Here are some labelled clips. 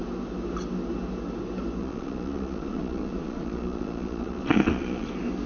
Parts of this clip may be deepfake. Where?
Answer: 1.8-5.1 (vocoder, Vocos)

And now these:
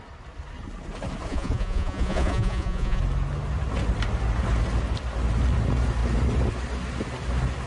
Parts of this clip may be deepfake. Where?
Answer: 1.3-3.0 (vocoder, Vocos)